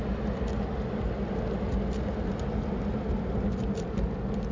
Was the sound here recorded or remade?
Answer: recorded